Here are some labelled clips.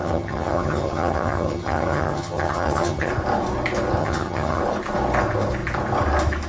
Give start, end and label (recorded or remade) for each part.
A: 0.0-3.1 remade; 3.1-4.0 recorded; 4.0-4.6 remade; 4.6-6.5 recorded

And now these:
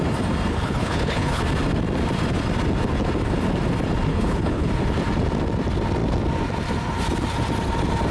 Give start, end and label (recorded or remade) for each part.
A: 0.0-0.5 recorded; 0.5-1.4 remade; 1.4-4.1 recorded; 4.1-4.7 remade; 4.7-8.1 recorded

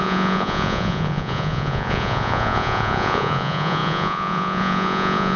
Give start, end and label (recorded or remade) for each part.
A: 0.0-5.4 remade

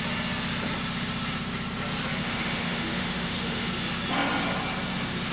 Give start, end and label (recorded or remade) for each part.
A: 0.0-2.2 recorded; 2.2-3.7 remade; 3.7-5.3 recorded

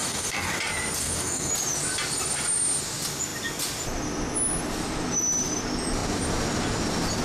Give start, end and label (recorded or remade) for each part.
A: 0.0-0.6 remade; 0.6-1.0 recorded; 1.0-1.5 remade; 1.5-7.2 recorded